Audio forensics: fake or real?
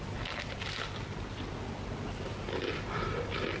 real